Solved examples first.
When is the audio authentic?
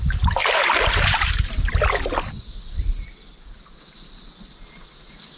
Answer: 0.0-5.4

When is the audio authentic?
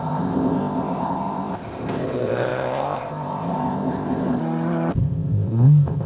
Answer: 4.4-4.9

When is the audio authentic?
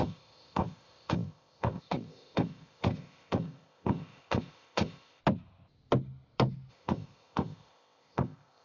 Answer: 5.2-6.7